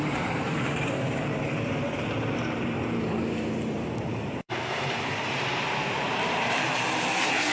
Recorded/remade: remade